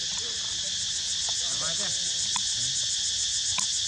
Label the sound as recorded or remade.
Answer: recorded